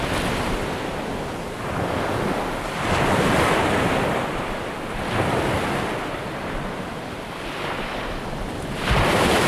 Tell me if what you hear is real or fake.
real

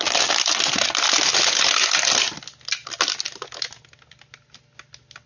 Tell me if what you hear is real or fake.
real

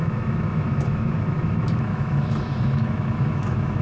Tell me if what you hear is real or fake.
fake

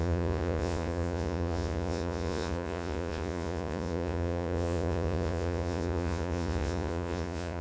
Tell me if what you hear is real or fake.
fake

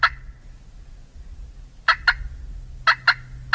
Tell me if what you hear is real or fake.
real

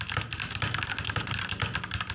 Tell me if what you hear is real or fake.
real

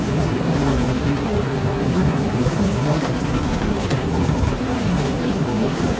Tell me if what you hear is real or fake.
fake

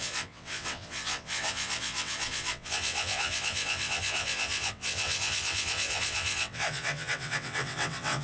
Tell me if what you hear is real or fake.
fake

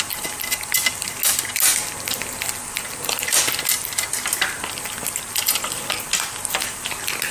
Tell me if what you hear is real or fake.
real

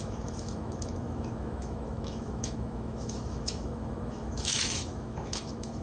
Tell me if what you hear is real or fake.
fake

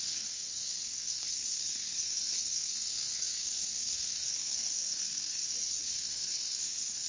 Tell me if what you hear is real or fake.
fake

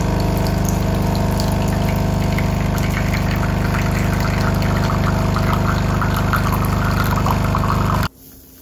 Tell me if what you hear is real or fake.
real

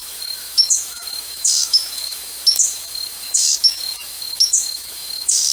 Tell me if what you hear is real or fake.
fake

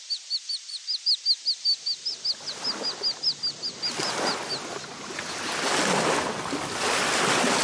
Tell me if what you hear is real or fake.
real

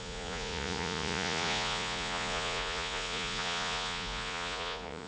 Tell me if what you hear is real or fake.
fake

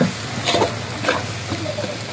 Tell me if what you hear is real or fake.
real